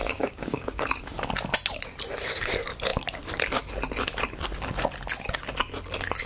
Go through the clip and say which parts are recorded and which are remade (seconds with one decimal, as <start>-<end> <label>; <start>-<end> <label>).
0.0-0.8 remade; 0.8-6.3 recorded